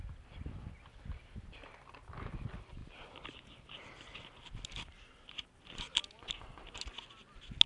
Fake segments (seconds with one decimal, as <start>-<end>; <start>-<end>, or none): none